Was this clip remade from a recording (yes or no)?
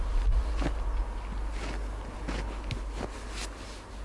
no